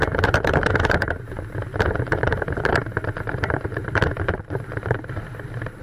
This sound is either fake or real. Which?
fake